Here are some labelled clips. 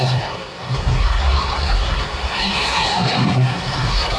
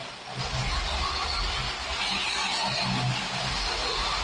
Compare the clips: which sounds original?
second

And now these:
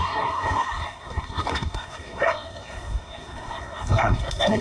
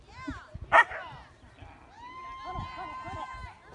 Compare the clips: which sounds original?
second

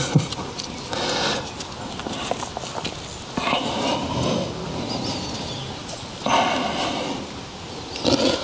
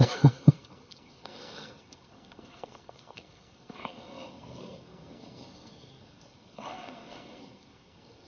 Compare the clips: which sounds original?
first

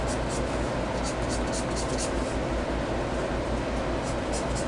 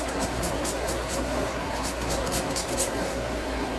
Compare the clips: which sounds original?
first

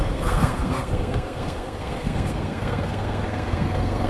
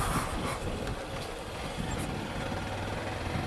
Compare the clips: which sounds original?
second